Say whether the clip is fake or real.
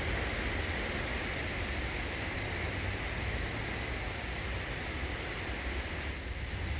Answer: real